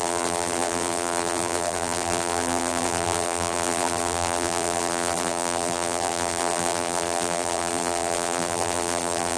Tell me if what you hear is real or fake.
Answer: fake